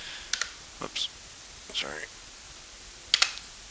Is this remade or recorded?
recorded